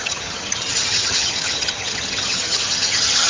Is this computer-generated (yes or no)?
yes